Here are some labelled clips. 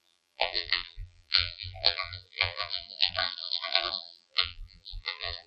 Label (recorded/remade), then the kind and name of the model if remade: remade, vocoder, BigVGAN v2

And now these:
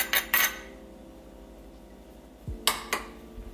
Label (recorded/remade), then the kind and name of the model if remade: recorded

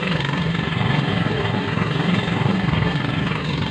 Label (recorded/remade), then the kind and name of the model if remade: remade, codec, SNAC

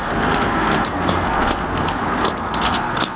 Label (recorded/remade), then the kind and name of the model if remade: remade, codec, SNAC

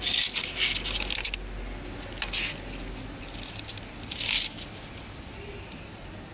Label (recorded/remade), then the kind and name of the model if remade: recorded